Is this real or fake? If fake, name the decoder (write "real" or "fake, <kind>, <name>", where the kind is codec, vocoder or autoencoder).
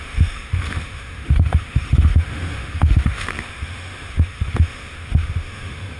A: fake, autoencoder, DAC-VAE